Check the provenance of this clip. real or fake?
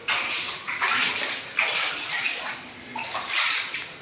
real